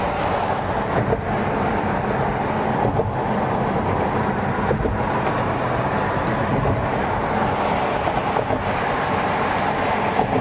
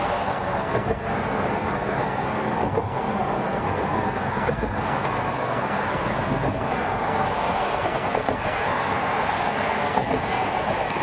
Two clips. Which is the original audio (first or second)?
first